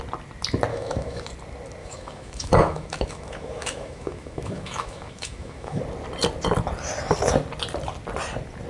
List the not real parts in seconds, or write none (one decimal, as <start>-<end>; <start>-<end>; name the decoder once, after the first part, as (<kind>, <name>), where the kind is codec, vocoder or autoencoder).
0.7-1.3 (autoencoder, DAC-VAE); 1.8-5.8